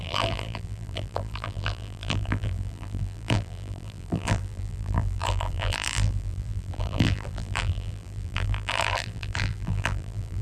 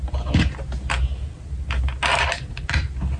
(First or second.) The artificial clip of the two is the first